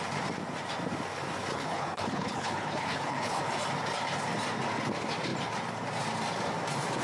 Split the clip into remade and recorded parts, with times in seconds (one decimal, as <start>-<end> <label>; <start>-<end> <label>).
0.0-1.5 recorded; 1.5-3.4 remade; 3.4-7.0 recorded